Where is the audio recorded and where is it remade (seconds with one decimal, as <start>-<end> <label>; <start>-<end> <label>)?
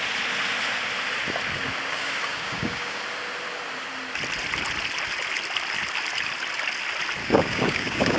0.0-1.9 recorded; 1.9-3.0 remade; 3.0-7.2 recorded; 7.2-8.2 remade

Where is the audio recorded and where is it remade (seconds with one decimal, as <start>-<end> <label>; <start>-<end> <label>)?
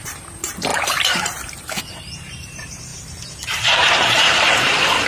0.0-5.1 remade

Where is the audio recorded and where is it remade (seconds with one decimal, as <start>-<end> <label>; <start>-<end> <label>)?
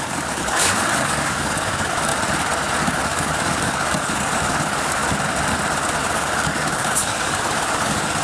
0.0-2.1 remade; 2.1-2.8 recorded; 2.8-5.0 remade; 5.0-6.0 recorded; 6.0-8.2 remade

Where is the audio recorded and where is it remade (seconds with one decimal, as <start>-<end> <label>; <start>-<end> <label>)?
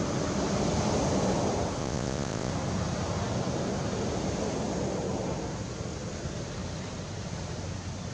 0.0-1.8 recorded; 1.8-2.5 remade; 2.5-8.1 recorded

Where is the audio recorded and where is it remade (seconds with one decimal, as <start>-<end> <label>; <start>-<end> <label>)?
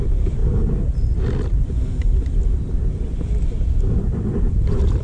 0.0-0.4 remade; 0.4-2.3 recorded; 2.3-5.0 remade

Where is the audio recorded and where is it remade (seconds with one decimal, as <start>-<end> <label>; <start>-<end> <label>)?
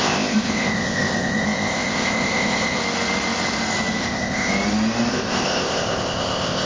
0.0-2.8 remade; 2.8-4.0 recorded; 4.0-4.5 remade; 4.5-5.1 recorded; 5.1-6.7 remade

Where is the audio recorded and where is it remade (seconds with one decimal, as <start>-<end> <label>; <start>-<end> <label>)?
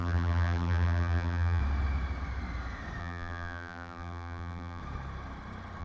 0.0-1.6 remade; 1.6-3.0 recorded; 3.0-4.8 remade; 4.8-5.8 recorded